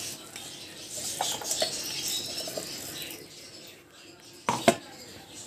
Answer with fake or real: real